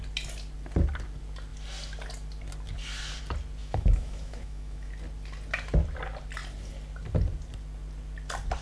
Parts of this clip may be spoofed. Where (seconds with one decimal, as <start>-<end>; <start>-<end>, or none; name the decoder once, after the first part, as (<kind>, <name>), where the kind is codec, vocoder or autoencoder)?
3.6-4.9 (autoencoder, DAC-VAE)